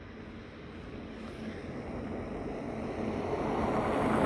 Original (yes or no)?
yes